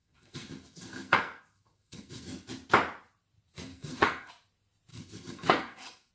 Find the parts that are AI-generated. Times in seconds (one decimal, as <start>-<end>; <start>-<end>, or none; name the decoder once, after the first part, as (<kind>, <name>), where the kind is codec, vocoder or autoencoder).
0.0-2.5 (codec, SNAC); 3.7-4.3; 4.9-6.1